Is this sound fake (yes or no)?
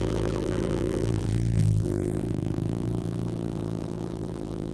yes